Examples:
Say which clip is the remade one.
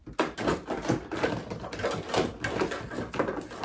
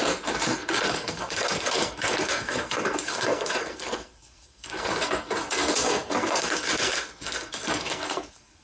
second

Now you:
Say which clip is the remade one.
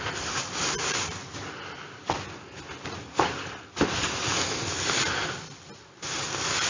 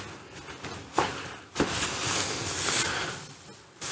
first